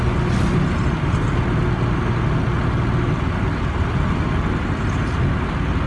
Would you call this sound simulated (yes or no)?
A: no